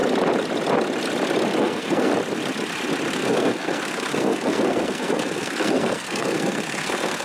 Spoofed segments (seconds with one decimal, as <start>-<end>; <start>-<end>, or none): 1.6-2.1; 3.1-7.2